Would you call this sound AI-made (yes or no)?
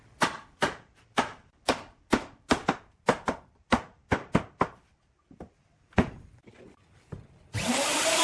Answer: no